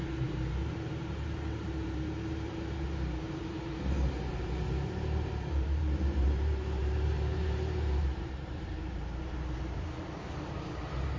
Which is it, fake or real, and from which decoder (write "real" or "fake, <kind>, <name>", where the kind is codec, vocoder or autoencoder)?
fake, vocoder, BigVGAN v2